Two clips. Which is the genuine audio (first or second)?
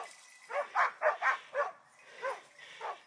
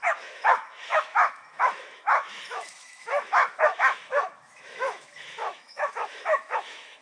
first